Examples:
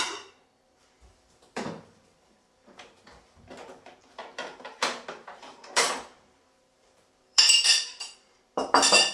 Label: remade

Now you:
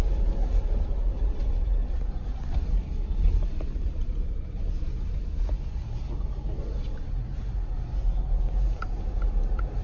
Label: recorded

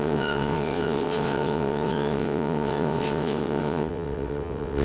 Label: remade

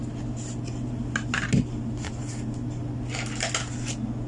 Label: recorded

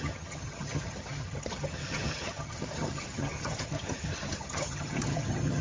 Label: remade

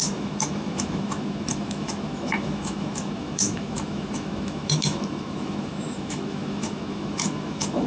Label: remade